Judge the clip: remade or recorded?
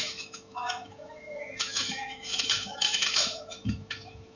remade